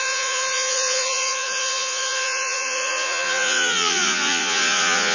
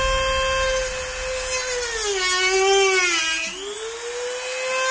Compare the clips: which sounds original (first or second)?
second